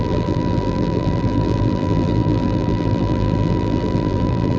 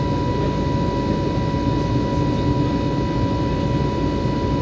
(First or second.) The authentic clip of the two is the second